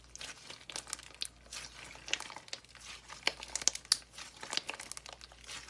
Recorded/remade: recorded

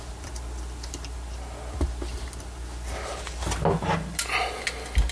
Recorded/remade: recorded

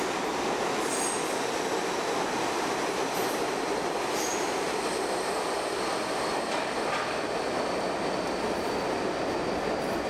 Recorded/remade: recorded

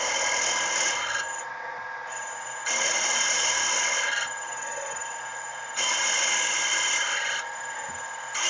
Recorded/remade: recorded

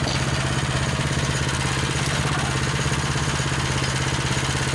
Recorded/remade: recorded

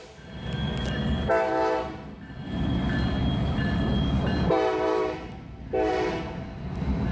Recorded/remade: recorded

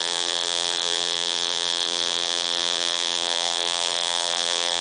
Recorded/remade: remade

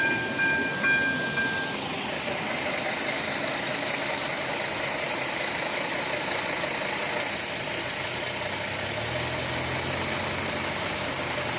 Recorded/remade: recorded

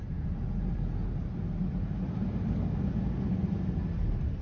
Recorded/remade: recorded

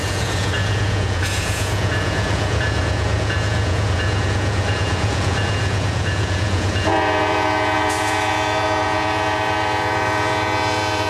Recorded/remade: remade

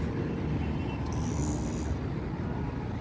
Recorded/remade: recorded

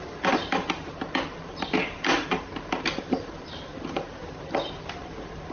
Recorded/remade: remade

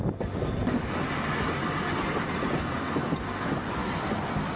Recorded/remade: recorded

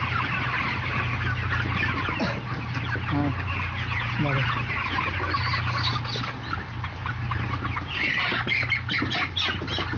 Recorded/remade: recorded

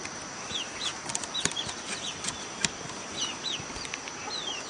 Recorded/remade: remade